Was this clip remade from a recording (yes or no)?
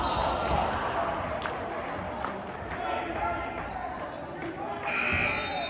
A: no